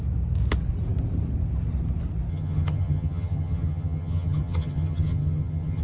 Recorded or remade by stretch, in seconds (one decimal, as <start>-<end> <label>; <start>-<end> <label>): 0.0-2.3 recorded; 2.3-5.8 remade